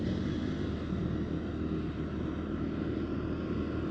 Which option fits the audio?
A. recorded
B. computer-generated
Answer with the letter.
A